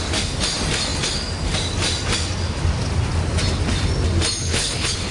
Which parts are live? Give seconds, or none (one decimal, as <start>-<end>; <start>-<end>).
0.0-4.4

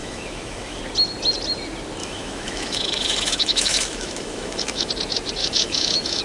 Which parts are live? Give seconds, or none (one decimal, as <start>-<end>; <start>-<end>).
0.8-2.0; 4.9-5.4

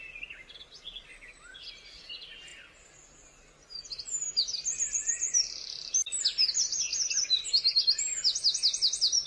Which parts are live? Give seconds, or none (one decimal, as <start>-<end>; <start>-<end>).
0.0-9.3

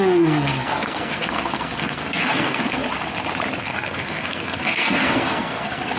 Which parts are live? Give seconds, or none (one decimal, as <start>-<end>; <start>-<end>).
2.8-3.6

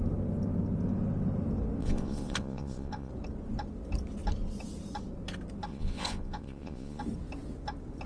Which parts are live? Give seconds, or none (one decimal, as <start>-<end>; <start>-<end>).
0.0-1.8; 3.1-5.7; 7.0-8.1

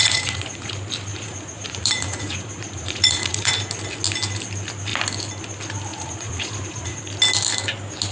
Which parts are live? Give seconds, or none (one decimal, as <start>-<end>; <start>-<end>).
0.7-1.1; 3.5-5.9; 7.0-8.1

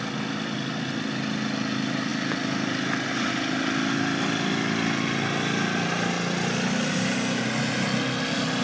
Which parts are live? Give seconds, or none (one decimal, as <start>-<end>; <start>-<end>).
0.0-8.6

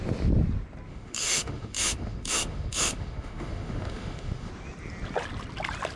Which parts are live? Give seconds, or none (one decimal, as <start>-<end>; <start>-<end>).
0.0-0.9; 4.5-6.0